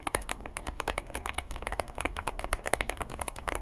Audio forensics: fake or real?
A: fake